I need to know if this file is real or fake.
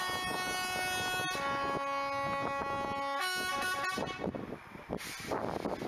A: real